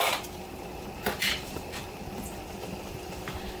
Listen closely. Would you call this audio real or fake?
fake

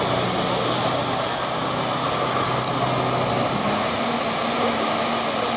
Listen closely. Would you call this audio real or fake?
real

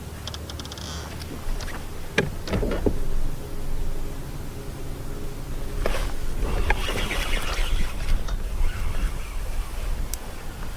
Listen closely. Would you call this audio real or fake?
real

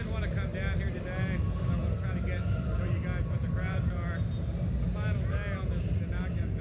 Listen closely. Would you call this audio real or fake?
real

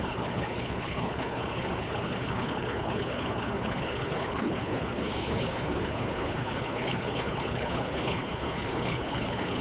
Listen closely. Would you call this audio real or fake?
fake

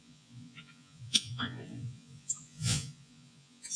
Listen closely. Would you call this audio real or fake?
fake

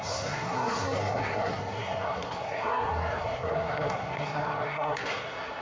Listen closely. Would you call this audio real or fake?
fake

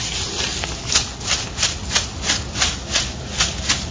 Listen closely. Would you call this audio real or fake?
real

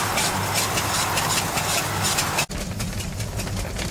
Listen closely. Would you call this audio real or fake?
real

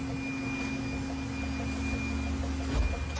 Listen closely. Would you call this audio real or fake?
real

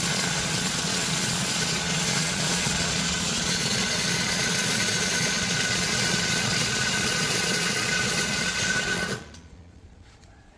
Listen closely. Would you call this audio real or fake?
fake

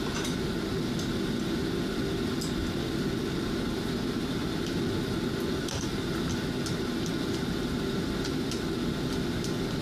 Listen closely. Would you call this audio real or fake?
real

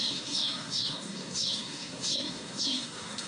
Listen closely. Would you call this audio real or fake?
fake